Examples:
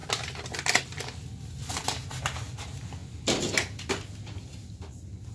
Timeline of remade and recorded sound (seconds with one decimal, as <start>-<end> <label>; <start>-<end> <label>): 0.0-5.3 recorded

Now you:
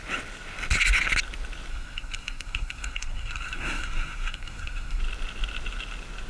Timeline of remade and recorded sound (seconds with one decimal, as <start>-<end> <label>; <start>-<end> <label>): 0.0-1.7 recorded; 1.7-5.0 remade; 5.0-6.3 recorded

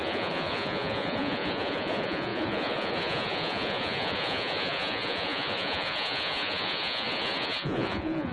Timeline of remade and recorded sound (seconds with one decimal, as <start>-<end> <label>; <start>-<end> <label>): 0.0-8.3 remade

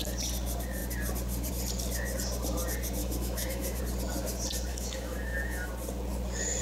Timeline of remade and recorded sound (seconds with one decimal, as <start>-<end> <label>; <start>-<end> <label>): 0.0-3.0 recorded; 3.0-3.8 remade; 3.8-4.7 recorded; 4.7-5.7 remade; 5.7-6.6 recorded

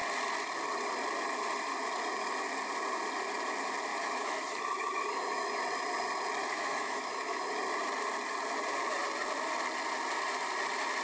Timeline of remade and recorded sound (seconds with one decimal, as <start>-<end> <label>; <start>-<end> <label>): 0.0-3.9 recorded; 3.9-5.6 remade; 5.6-6.4 recorded; 6.4-7.6 remade; 7.6-11.0 recorded

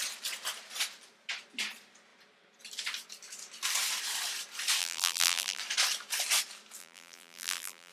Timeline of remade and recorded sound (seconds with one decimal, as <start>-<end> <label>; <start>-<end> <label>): 0.0-4.8 recorded; 4.8-5.6 remade; 5.6-6.8 recorded; 6.8-7.9 remade